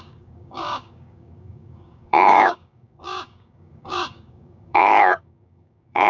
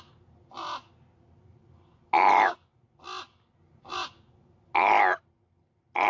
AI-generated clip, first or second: first